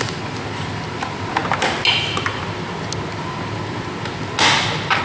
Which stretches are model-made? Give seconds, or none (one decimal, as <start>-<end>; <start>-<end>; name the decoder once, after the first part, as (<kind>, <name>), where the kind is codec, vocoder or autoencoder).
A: none